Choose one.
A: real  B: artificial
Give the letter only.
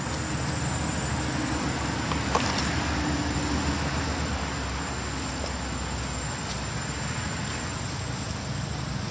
A